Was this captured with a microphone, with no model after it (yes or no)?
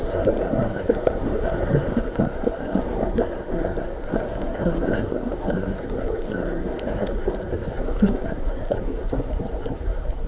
no